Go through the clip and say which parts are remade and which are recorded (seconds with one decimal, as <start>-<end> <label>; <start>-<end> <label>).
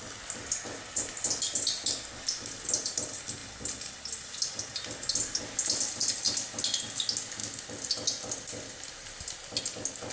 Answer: 0.0-10.1 recorded